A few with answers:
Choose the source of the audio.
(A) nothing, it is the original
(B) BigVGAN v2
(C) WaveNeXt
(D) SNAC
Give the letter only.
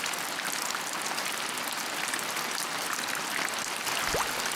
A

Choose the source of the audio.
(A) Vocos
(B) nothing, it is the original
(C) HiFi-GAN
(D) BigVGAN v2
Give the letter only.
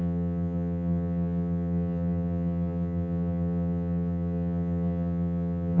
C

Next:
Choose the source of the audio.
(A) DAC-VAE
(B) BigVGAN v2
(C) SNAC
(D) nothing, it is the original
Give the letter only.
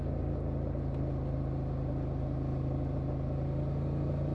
D